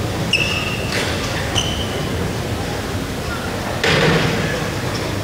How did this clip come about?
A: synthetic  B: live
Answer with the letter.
B